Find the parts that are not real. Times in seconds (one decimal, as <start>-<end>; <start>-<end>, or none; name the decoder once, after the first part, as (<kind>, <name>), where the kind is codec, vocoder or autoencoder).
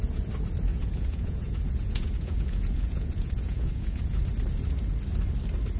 0.7-4.2 (vocoder, Vocos)